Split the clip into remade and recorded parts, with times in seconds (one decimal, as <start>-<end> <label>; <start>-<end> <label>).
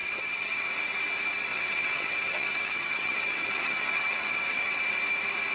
0.0-0.7 remade; 0.7-1.5 recorded; 1.5-4.8 remade; 4.8-5.5 recorded